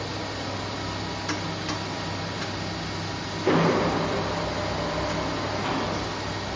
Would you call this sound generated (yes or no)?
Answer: no